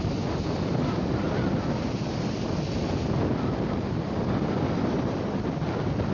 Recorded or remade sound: recorded